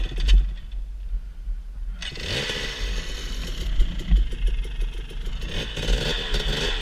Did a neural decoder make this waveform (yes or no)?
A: no